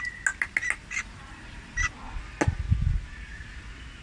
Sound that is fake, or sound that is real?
real